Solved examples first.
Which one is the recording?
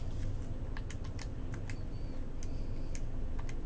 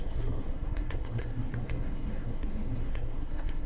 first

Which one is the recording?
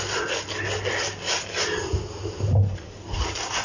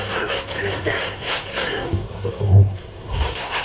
first